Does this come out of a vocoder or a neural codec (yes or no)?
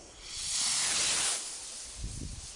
no